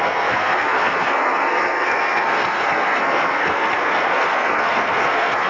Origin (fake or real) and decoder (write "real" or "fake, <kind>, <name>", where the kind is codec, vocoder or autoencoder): fake, codec, SNAC